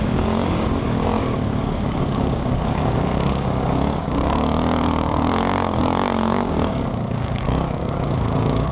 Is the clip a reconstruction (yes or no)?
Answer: yes